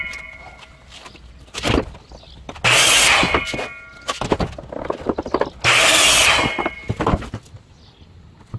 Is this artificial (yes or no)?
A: no